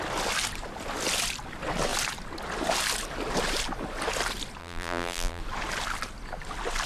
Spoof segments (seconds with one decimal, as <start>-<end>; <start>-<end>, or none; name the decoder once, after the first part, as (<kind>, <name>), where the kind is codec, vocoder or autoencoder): 4.6-5.4 (vocoder, BigVGAN v2)